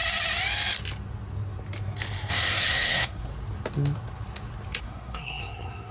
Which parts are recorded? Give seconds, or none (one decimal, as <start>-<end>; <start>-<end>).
0.0-2.3; 3.3-4.8